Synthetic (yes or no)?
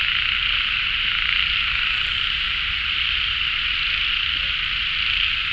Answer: no